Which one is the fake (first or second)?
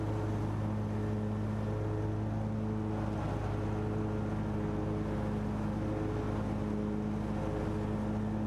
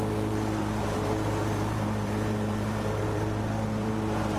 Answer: second